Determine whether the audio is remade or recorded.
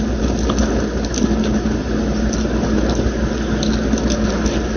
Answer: recorded